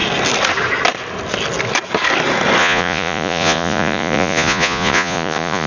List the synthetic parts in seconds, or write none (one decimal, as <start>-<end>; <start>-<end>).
2.6-5.7